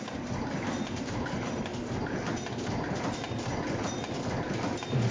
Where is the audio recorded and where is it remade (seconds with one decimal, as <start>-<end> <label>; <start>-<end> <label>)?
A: 0.0-1.7 remade; 1.7-2.5 recorded; 2.5-5.1 remade